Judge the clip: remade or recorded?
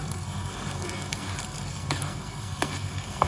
remade